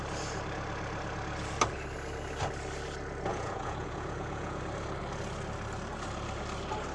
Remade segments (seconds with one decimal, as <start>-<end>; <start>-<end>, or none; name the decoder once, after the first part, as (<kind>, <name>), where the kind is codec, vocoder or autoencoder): 3.3-4.6 (vocoder, Vocos)